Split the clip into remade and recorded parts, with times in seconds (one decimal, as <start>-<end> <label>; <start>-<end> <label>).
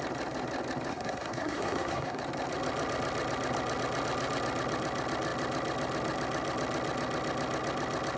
0.0-0.9 recorded; 0.9-2.2 remade; 2.2-8.2 recorded